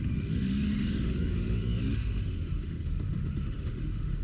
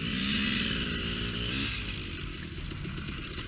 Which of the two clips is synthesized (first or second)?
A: first